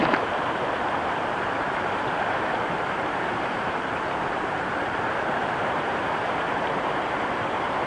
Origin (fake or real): fake